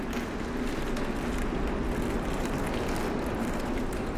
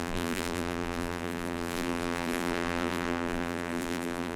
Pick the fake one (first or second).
second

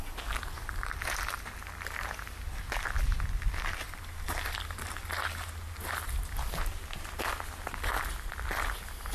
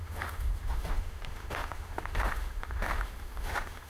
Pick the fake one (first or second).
second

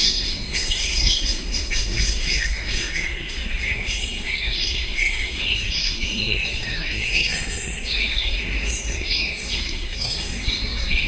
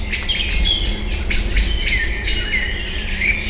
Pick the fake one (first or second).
first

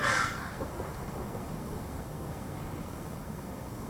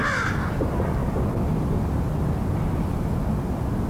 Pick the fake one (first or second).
first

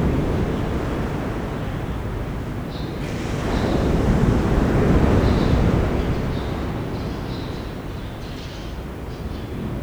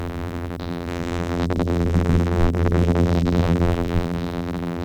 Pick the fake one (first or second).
second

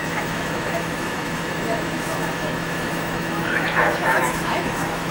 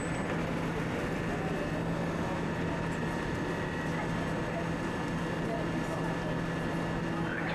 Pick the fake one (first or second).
first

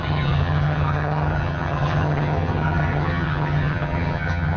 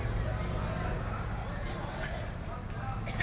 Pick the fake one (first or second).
first